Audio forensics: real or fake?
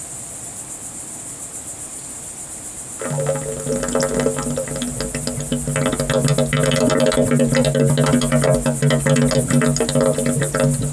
real